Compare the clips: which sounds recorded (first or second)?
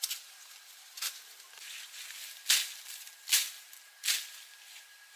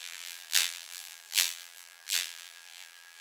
first